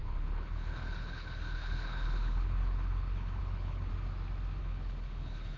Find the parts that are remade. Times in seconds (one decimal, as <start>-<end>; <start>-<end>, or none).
0.0-3.9; 4.6-5.6